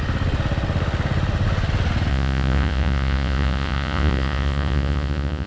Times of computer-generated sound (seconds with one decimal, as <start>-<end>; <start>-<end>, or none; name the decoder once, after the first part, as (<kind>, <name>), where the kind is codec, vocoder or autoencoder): 2.1-5.5 (vocoder, Vocos)

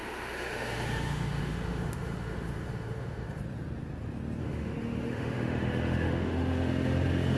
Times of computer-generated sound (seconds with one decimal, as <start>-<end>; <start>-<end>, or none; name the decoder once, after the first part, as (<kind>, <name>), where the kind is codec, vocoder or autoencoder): 0.0-3.4 (autoencoder, DAC-VAE); 4.4-7.4

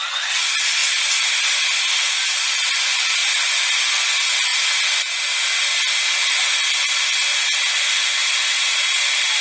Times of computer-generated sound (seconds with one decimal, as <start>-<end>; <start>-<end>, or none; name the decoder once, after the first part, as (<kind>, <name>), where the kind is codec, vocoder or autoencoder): 0.8-1.3 (vocoder, BigVGAN v2)

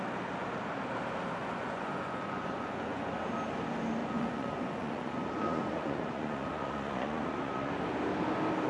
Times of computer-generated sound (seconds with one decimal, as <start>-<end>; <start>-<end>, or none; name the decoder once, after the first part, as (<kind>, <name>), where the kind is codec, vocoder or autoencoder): 1.4-3.1 (vocoder, Vocos); 4.0-7.7

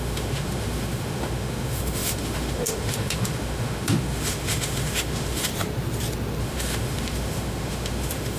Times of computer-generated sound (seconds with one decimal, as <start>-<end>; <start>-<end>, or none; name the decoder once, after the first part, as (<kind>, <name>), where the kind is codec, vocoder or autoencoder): 0.0-5.5 (autoencoder, DAC-VAE); 6.4-8.4

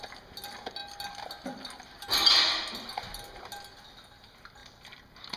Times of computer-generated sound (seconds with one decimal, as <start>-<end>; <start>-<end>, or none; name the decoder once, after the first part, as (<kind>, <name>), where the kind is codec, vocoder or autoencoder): none